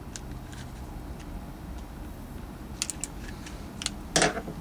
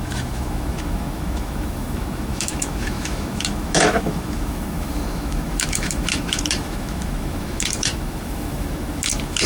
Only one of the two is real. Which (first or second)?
first